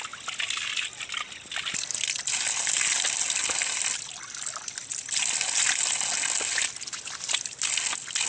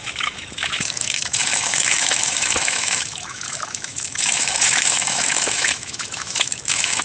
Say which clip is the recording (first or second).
first